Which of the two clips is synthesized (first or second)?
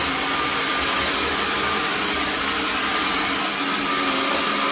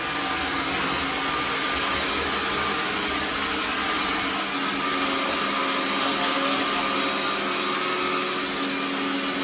first